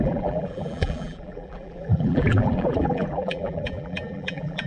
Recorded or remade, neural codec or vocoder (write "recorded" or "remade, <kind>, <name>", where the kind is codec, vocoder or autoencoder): remade, vocoder, BigVGAN v2